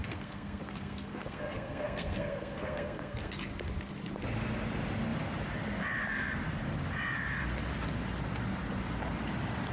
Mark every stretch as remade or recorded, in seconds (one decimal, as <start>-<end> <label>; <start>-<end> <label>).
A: 0.0-3.3 remade; 3.3-9.7 recorded